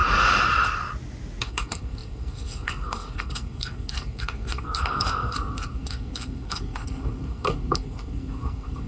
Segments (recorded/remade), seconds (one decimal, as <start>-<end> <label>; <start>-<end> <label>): 0.0-1.4 recorded; 1.4-8.9 remade

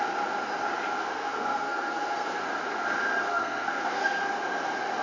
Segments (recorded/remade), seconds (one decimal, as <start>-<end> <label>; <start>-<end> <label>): 0.0-1.0 recorded; 1.0-2.4 remade; 2.4-3.3 recorded; 3.3-4.2 remade; 4.2-5.0 recorded

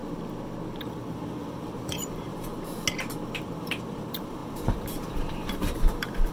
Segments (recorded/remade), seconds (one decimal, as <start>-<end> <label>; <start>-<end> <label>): 0.0-0.8 recorded; 0.8-2.5 remade; 2.5-3.4 recorded; 3.4-6.3 remade

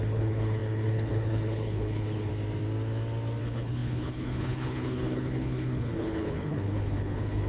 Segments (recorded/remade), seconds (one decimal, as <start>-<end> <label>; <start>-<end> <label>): 0.0-2.3 remade; 2.3-3.4 recorded; 3.4-7.5 remade